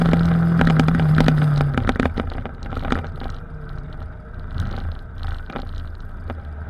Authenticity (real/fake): real